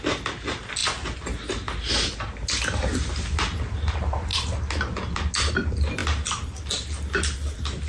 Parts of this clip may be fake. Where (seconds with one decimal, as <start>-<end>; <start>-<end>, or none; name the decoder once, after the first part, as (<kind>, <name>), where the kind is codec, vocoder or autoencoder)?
none